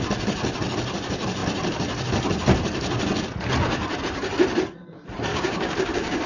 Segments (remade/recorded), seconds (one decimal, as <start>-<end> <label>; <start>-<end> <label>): 0.0-5.3 recorded; 5.3-6.3 remade